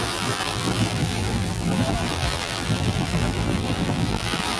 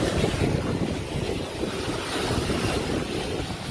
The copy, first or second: first